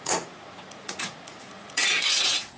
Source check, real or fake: fake